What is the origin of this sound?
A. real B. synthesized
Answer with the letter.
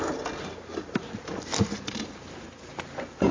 A